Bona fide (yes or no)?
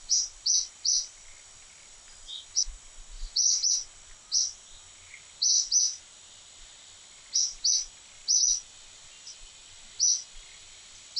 yes